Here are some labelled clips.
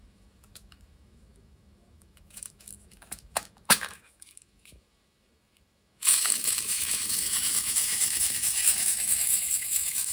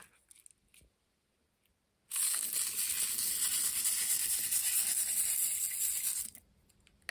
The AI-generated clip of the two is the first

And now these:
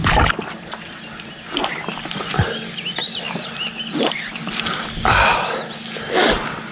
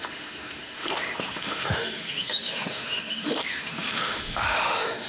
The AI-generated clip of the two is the second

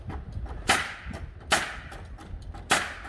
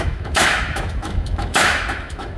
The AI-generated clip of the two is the second